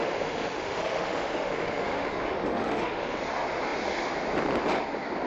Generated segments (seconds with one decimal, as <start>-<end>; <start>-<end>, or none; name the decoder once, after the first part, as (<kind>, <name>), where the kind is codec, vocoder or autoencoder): 0.0-3.2 (autoencoder, DAC-VAE)